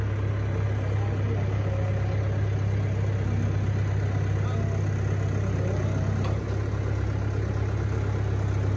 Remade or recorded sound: recorded